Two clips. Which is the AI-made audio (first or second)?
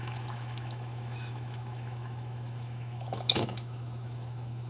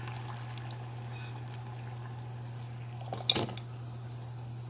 first